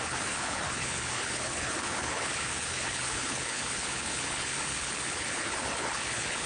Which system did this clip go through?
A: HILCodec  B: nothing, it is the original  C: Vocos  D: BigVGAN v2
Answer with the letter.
A